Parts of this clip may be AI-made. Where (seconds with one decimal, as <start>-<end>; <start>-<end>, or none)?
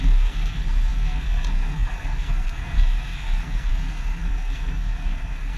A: 0.0-5.6